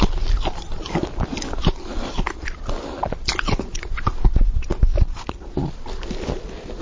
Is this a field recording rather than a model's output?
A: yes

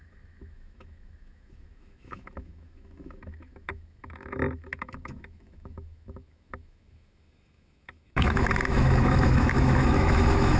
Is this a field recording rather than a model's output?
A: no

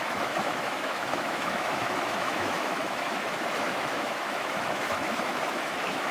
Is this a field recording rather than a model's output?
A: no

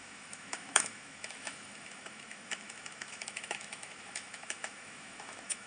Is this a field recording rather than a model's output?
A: no